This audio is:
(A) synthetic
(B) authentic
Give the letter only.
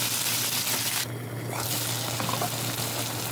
B